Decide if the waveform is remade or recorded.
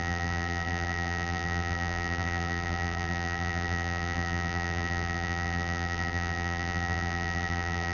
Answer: remade